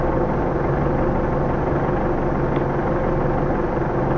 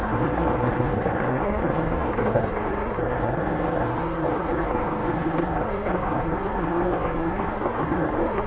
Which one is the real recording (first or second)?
first